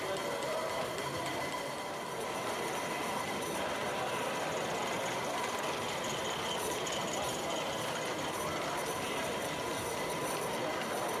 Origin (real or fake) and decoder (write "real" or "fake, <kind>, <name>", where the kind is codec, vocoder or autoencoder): real